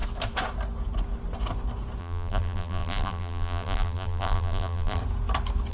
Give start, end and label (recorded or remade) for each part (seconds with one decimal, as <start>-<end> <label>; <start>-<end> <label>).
0.0-2.0 recorded; 2.0-5.0 remade; 5.0-5.7 recorded